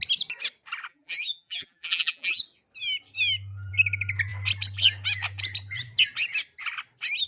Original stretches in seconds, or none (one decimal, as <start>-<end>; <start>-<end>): 0.0-0.9; 2.4-7.3